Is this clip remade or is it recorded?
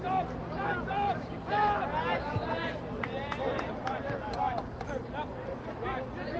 recorded